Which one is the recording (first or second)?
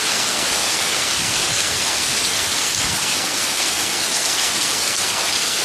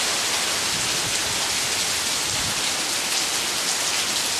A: second